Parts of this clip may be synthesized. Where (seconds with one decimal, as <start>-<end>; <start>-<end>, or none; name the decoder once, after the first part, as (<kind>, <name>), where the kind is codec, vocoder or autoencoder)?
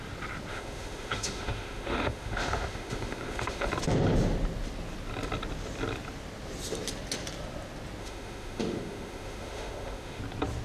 0.5-3.7 (autoencoder, DAC-VAE); 8.0-10.2